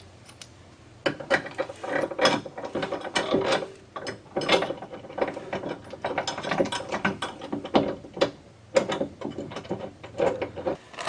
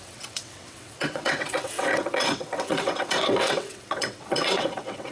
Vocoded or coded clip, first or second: second